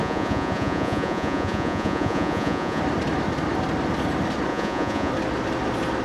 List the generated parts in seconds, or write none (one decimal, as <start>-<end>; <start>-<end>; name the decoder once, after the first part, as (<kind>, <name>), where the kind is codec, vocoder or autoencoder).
0.0-2.8 (vocoder, Vocos); 4.5-5.1